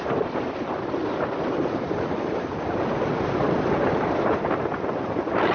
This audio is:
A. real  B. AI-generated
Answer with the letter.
A